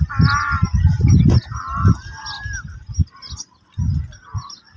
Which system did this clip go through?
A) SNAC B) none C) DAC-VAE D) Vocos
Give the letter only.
B